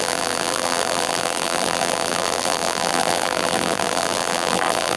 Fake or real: fake